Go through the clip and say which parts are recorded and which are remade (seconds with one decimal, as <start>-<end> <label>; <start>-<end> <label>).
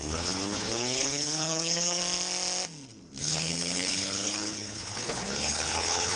0.0-2.0 remade; 2.0-3.2 recorded; 3.2-6.2 remade